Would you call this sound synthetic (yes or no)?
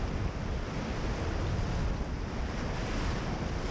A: no